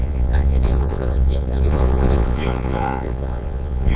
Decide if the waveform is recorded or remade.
remade